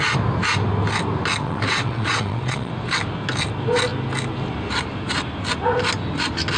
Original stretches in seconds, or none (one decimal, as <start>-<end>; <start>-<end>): 0.0-1.4; 2.7-6.6